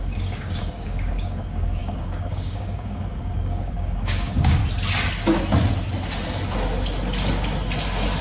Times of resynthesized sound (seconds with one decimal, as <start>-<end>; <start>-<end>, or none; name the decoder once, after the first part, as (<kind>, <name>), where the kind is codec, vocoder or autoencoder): 0.0-4.6 (codec, DAC)